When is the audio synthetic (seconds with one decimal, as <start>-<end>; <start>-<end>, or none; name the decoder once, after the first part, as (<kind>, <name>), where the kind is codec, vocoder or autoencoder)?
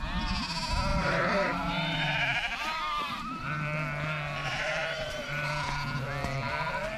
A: 0.9-3.4 (vocoder, BigVGAN v2); 4.4-5.5